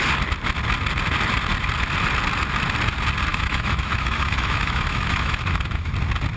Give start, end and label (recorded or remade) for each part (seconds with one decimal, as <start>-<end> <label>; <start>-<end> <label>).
0.0-3.3 recorded; 3.3-5.9 remade; 5.9-6.4 recorded